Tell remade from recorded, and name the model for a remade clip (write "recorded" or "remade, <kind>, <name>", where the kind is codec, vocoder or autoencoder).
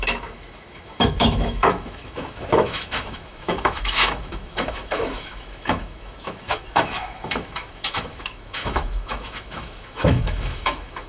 remade, autoencoder, DAC-VAE